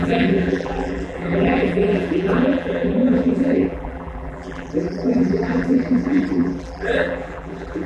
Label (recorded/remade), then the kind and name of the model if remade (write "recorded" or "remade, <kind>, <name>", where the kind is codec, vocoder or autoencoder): remade, vocoder, BigVGAN v2